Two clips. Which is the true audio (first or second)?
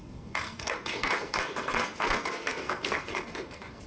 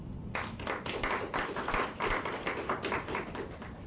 second